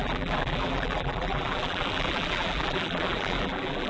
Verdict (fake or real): fake